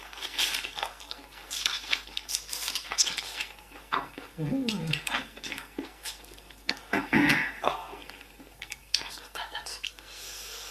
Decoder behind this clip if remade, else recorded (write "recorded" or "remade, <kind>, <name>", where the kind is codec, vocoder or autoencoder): remade, codec, SNAC